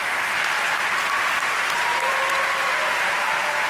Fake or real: fake